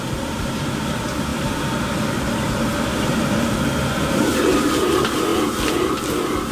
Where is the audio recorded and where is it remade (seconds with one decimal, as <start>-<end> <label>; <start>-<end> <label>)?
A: 0.0-6.5 recorded